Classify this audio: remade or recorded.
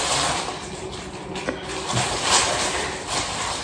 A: recorded